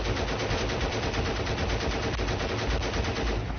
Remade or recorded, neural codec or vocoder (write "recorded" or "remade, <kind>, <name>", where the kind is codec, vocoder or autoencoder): recorded